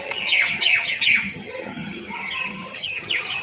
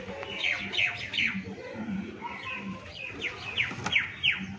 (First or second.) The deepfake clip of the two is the first